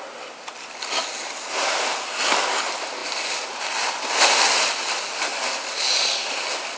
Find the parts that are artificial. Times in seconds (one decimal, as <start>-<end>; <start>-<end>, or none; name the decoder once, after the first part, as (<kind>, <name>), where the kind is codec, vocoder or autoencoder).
none